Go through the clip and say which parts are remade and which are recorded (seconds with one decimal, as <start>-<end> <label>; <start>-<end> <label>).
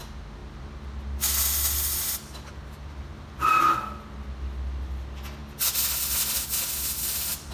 0.0-7.5 recorded